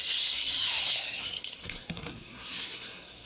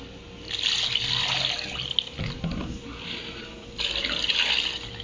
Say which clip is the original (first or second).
second